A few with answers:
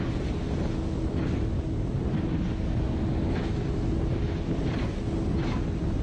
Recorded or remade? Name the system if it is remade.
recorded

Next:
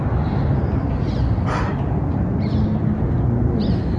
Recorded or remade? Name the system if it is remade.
recorded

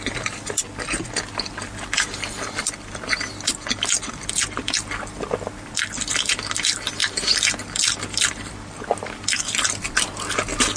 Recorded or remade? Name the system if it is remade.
recorded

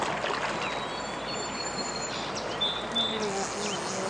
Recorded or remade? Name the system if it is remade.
recorded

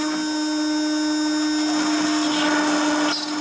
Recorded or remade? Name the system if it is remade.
recorded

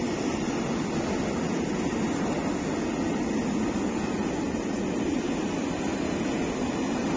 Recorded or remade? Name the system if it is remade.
recorded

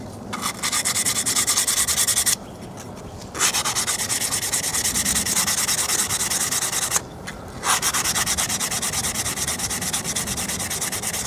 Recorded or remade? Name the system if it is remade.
recorded